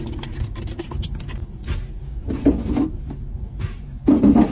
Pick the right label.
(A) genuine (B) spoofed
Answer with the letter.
A